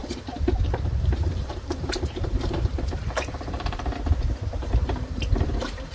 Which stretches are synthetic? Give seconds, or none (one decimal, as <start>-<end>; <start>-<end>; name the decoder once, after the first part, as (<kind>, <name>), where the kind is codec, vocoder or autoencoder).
0.0-3.9 (vocoder, BigVGAN v2); 4.6-5.9